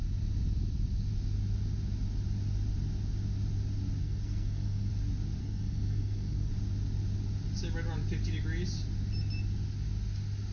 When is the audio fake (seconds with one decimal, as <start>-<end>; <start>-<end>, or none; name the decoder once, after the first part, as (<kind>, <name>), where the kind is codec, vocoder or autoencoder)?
4.0-4.9 (codec, SNAC); 5.4-6.5